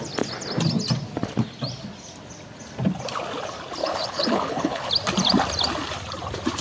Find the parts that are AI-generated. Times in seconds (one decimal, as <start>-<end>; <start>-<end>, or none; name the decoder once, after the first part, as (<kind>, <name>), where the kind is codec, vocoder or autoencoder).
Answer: 3.8-4.9 (codec, HILCodec)